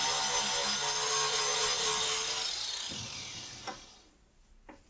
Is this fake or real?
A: real